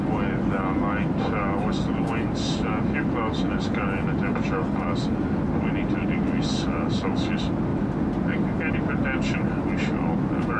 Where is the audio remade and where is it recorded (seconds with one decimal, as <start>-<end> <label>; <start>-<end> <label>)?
0.0-10.6 recorded